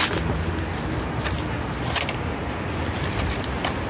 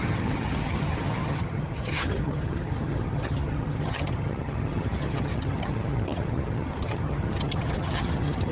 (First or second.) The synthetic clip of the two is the second